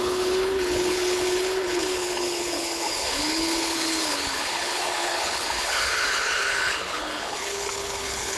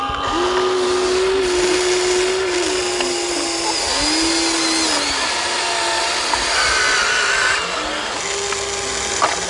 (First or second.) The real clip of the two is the second